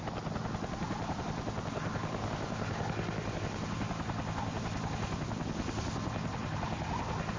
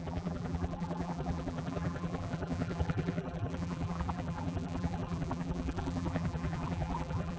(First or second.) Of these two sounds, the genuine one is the first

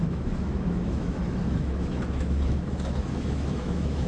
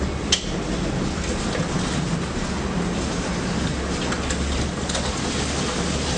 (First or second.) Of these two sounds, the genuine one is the second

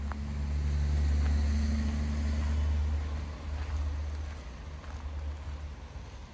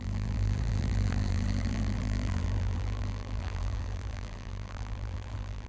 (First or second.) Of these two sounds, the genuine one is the first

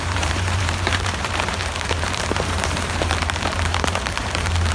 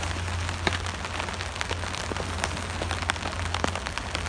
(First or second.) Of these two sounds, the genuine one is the second